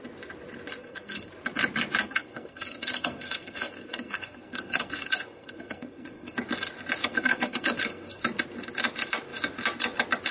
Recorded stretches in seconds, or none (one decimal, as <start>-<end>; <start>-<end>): 0.0-0.8; 1.3-2.0; 6.4-7.0; 8.2-10.3